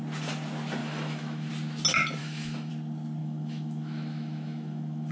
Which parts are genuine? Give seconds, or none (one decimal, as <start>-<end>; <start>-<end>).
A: 0.0-0.8; 1.5-2.2; 2.7-3.2